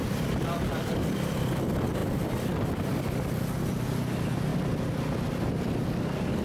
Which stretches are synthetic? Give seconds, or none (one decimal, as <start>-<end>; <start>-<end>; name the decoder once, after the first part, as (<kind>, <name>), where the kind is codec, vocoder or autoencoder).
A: 0.0-0.9 (vocoder, BigVGAN v2)

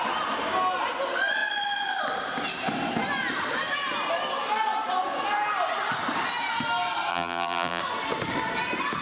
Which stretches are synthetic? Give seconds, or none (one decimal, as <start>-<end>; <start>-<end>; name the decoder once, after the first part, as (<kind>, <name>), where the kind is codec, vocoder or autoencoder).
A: 7.1-7.8 (vocoder, BigVGAN v2)